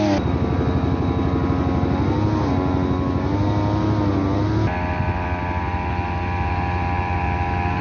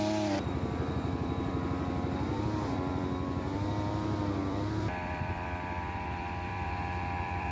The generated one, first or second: second